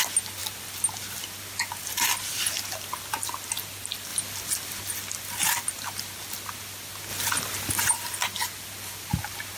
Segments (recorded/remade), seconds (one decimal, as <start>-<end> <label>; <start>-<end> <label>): 0.0-9.6 recorded